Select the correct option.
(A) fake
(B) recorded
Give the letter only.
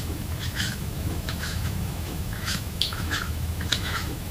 A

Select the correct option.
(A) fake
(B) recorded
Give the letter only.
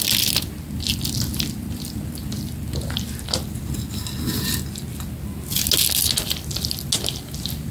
B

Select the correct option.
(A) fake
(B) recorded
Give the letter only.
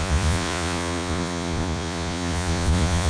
A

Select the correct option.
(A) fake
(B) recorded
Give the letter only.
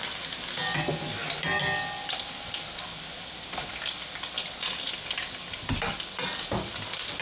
B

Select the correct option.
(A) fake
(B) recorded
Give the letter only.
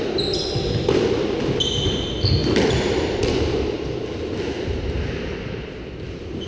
B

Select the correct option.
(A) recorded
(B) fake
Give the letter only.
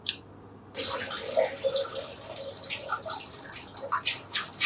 A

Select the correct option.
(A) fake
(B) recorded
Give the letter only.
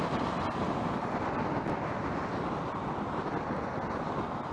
B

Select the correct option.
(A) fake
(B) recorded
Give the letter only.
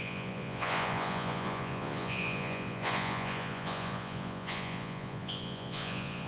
A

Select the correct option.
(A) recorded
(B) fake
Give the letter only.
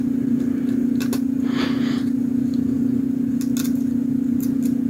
A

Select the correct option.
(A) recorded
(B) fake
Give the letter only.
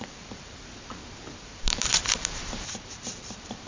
B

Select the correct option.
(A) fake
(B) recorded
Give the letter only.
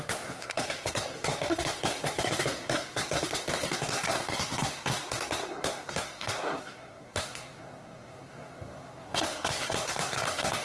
A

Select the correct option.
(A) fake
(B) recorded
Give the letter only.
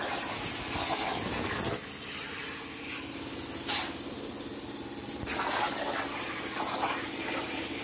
B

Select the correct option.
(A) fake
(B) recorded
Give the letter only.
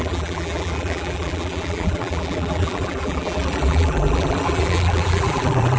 A